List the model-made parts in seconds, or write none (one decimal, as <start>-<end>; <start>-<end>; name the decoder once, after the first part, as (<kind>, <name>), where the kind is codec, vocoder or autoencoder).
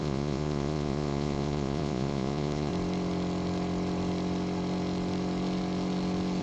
0.0-2.7 (vocoder, Vocos)